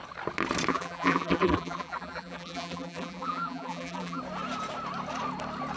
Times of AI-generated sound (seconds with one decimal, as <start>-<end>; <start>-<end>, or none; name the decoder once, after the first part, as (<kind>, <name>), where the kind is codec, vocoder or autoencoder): 0.7-4.2 (vocoder, BigVGAN v2)